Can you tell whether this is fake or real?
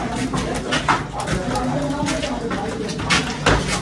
real